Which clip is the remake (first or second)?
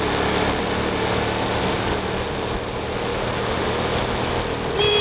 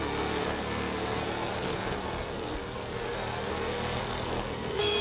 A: second